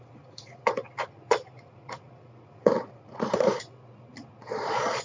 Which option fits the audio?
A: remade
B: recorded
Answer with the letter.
A